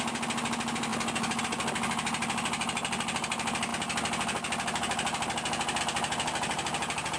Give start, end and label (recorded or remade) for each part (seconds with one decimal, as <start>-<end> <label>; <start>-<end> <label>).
0.0-7.2 recorded